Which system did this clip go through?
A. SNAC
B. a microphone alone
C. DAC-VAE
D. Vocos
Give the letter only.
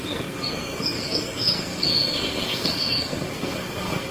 A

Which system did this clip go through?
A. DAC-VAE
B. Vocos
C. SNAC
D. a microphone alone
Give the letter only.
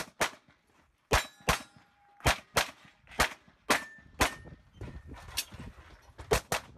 D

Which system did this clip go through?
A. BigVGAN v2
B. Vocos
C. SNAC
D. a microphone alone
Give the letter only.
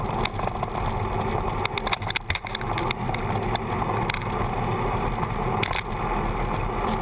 D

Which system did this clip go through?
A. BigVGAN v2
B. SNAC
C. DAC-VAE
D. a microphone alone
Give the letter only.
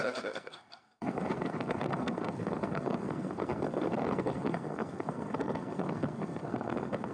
B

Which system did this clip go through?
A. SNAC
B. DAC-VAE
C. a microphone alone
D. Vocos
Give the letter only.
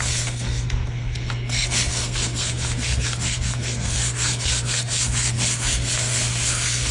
A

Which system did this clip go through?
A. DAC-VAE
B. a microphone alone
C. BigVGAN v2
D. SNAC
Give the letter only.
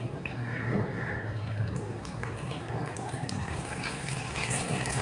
D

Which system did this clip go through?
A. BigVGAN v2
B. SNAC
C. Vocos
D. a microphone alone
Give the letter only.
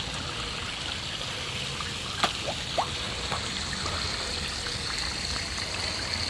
D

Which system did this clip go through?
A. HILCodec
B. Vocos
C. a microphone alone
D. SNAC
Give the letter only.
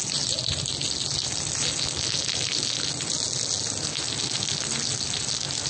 C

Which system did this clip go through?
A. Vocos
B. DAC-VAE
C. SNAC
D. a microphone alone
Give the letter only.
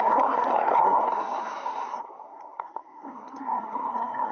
C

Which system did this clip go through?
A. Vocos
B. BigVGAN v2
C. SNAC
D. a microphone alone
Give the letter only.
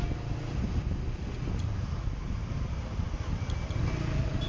D